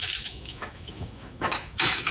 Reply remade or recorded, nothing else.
remade